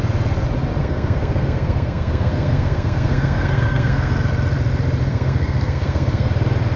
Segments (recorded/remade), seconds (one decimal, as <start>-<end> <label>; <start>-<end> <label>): 0.0-0.8 recorded; 0.8-4.1 remade; 4.1-5.1 recorded; 5.1-6.3 remade; 6.3-6.8 recorded